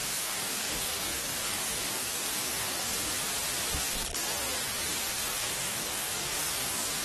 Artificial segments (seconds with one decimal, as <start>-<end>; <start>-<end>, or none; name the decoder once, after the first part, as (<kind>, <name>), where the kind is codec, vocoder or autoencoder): 0.0-3.1 (codec, DAC); 3.7-7.0